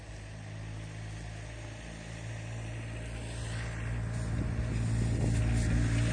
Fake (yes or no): no